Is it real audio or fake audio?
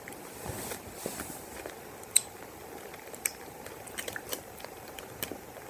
fake